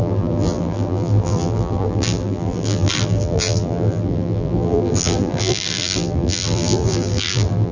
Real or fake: fake